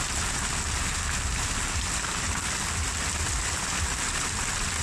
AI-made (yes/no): no